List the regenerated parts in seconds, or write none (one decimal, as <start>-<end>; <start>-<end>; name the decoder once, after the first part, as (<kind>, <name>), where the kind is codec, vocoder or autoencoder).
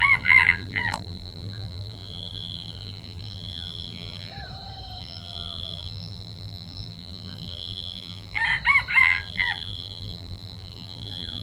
0.0-4.3 (vocoder, BigVGAN v2); 5.0-8.4; 9.0-11.4